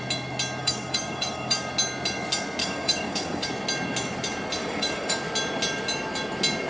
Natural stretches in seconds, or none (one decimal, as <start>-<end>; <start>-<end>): 0.0-0.6; 1.7-2.6; 3.5-4.6; 5.2-6.7